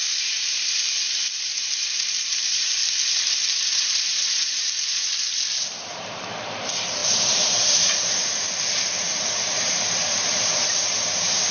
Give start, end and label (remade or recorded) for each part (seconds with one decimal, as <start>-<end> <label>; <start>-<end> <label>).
0.0-2.8 remade; 2.8-3.7 recorded; 3.7-11.5 remade